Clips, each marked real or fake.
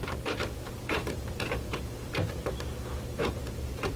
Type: fake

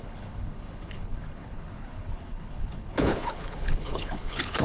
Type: fake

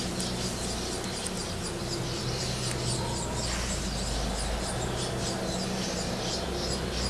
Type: real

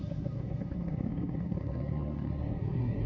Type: fake